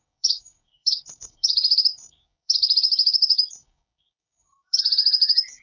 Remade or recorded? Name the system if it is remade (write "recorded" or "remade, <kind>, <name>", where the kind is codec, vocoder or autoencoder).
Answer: remade, codec, DAC